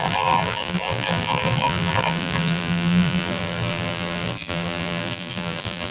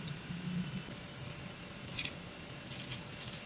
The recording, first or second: second